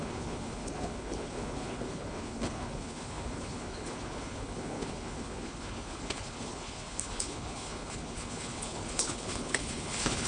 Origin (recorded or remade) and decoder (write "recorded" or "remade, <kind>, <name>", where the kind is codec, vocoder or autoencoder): remade, codec, HILCodec